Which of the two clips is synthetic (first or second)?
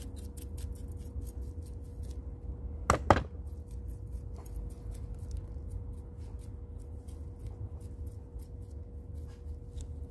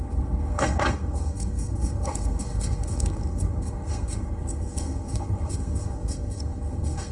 second